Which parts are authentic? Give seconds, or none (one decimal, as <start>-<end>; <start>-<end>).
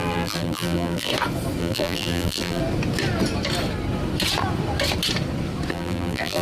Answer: 1.1-1.6; 2.6-5.7